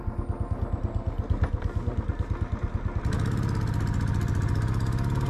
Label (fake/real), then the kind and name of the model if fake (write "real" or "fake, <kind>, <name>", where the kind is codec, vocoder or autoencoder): real